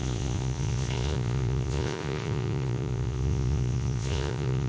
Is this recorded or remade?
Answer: remade